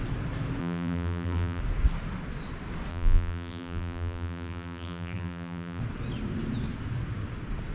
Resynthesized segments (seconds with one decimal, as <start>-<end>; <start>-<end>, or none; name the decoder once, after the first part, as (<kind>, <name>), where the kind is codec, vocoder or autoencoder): 0.6-1.6 (vocoder, BigVGAN v2); 2.9-5.8